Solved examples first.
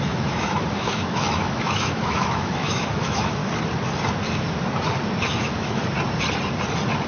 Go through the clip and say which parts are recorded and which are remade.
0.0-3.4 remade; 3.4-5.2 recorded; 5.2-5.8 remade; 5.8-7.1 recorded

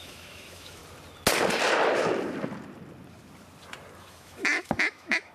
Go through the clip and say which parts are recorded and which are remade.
0.0-0.8 remade; 0.8-4.0 recorded; 4.0-5.3 remade

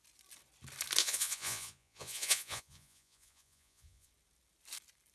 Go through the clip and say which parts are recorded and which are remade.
0.0-1.0 recorded; 1.0-4.1 remade; 4.1-5.1 recorded

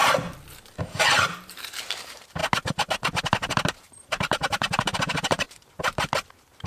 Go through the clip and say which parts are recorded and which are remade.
0.0-0.8 recorded; 0.8-2.4 remade; 2.4-3.2 recorded; 3.2-6.7 remade